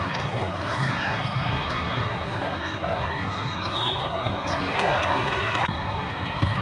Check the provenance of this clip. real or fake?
fake